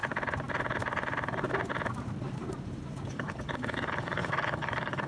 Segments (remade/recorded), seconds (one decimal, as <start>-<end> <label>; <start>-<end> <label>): 0.0-3.1 recorded; 3.1-5.1 remade